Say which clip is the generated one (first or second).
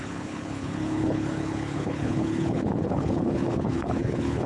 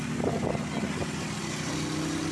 first